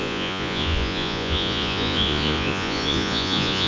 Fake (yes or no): yes